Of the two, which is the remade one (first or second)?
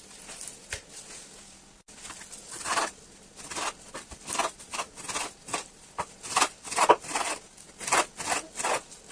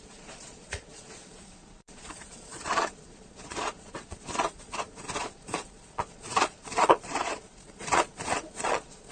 second